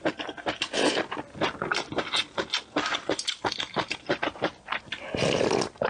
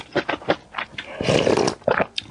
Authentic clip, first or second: second